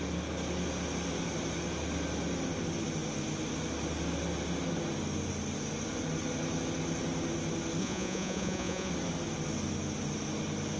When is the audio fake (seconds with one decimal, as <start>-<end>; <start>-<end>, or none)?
7.8-8.9